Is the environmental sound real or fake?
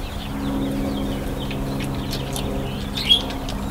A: real